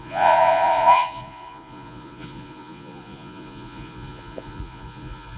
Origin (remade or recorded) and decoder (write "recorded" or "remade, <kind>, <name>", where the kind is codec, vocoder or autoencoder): remade, vocoder, Vocos